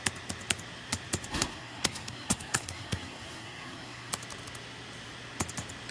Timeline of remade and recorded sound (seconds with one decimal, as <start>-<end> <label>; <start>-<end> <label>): 0.0-1.3 recorded; 1.3-4.1 remade; 4.1-5.9 recorded